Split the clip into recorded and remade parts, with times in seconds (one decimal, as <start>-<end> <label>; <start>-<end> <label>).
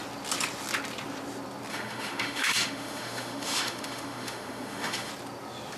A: 0.0-1.7 recorded; 1.7-5.1 remade; 5.1-5.8 recorded